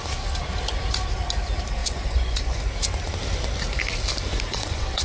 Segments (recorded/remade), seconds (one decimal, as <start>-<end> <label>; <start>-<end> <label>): 0.0-1.8 recorded; 1.8-2.6 remade; 2.6-4.3 recorded; 4.3-5.0 remade